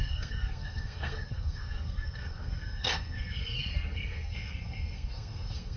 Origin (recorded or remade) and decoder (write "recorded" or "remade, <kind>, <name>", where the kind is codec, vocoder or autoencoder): remade, codec, SNAC